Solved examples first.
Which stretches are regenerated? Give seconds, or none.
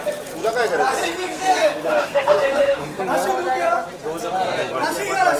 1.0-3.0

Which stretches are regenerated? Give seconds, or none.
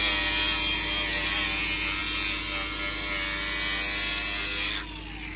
none